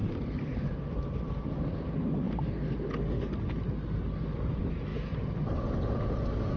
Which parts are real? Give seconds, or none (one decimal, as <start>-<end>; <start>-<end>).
0.0-6.6